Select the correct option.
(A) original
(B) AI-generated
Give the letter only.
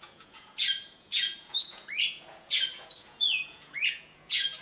B